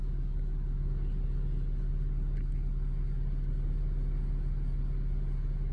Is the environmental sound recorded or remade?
recorded